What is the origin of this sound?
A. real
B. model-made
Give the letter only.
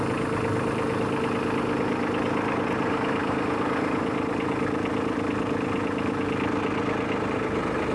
A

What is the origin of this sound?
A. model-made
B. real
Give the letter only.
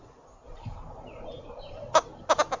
B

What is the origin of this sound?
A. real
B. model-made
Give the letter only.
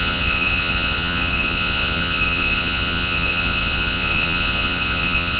B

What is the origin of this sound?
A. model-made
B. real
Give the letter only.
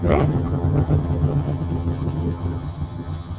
A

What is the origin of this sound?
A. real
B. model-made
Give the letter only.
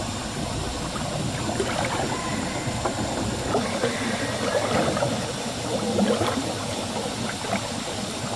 A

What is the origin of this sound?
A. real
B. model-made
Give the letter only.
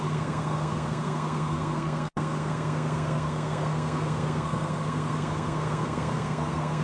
B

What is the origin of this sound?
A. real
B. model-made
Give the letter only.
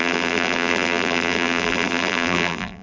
B